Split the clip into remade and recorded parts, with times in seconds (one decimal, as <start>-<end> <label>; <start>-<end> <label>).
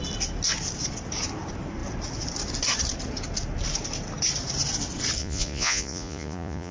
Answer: 0.0-5.2 recorded; 5.2-6.7 remade